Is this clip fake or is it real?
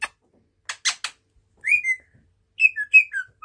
real